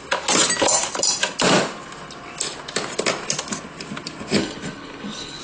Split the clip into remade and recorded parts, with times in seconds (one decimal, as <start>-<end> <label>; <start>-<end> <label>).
0.0-4.4 recorded; 4.4-5.4 remade